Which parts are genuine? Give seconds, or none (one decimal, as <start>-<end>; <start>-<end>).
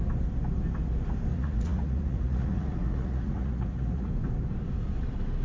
0.0-1.3; 4.1-5.4